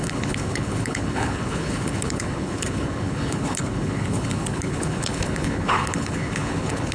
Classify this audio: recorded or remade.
remade